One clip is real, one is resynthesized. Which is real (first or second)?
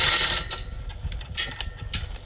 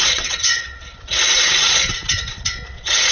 first